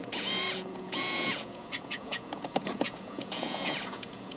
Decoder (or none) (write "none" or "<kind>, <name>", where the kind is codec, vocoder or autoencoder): vocoder, Vocos